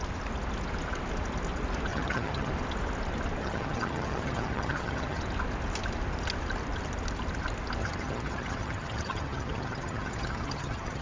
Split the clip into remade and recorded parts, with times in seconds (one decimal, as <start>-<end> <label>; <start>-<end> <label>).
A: 0.0-1.9 recorded; 1.9-2.5 remade; 2.5-3.4 recorded; 3.4-5.2 remade; 5.2-7.8 recorded; 7.8-11.0 remade